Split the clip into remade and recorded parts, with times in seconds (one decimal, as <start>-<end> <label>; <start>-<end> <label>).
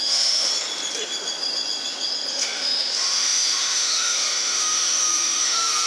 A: 0.0-0.5 remade; 0.5-2.3 recorded; 2.3-5.9 remade